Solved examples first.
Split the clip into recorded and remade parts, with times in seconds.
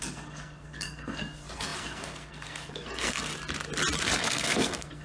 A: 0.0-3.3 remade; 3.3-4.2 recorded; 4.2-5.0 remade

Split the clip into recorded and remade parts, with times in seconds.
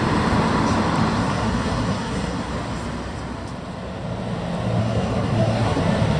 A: 0.0-1.2 recorded; 1.2-2.5 remade; 2.5-4.8 recorded; 4.8-5.8 remade; 5.8-6.2 recorded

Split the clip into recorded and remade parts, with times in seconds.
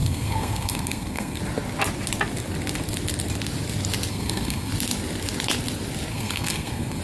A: 0.0-1.4 remade; 1.4-4.1 recorded; 4.1-4.7 remade; 4.7-6.1 recorded; 6.1-7.0 remade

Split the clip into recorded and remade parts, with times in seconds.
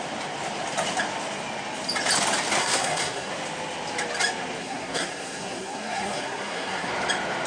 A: 0.0-2.6 recorded; 2.6-3.3 remade; 3.3-4.6 recorded; 4.6-6.9 remade; 6.9-7.5 recorded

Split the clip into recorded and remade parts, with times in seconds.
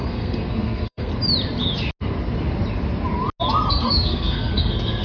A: 0.0-1.1 remade; 1.1-3.7 recorded; 3.7-5.0 remade